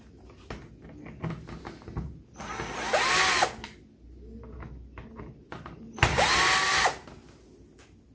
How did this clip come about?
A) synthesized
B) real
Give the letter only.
B